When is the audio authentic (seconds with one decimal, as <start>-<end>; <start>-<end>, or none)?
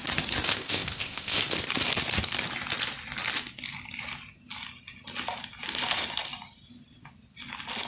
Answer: 0.0-0.5; 1.4-7.9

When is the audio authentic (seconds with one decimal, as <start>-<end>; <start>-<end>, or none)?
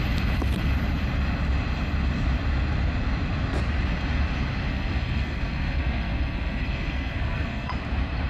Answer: 0.0-4.7; 7.7-8.3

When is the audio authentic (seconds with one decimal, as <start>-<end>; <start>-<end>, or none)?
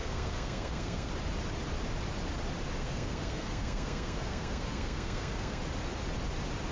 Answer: 1.1-2.8; 5.6-6.7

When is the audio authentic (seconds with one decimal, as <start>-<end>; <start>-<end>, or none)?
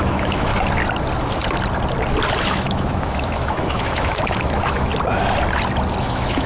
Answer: 0.5-2.4; 4.9-6.0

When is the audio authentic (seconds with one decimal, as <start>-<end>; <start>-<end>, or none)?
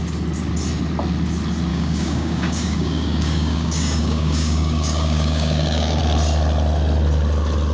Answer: 0.0-1.7; 6.0-7.7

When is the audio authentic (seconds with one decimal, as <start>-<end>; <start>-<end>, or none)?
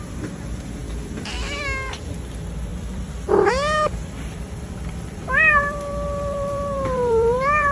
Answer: 0.0-2.7; 3.5-4.0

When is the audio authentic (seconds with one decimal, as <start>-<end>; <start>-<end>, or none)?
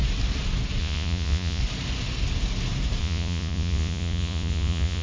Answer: 0.0-0.8; 1.6-3.0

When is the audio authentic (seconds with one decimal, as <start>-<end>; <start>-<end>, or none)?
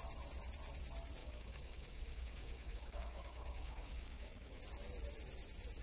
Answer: 0.0-1.2; 4.6-5.8